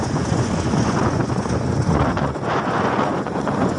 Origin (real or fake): fake